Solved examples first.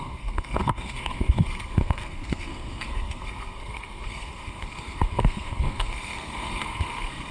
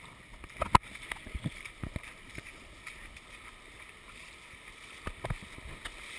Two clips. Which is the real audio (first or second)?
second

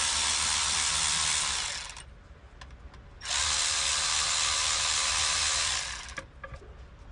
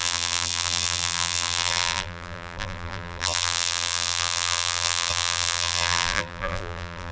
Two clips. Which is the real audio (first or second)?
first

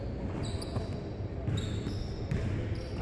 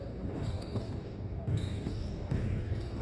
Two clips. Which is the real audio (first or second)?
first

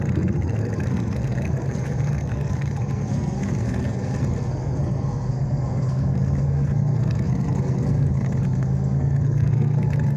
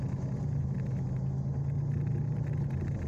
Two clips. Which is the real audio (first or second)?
second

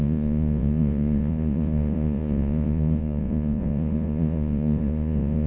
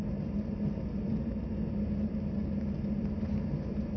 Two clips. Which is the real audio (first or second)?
second